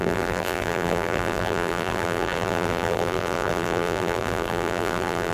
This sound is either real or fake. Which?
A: fake